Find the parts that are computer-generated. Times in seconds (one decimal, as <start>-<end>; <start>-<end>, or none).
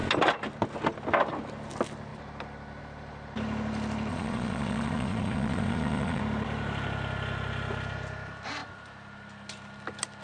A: 4.1-6.2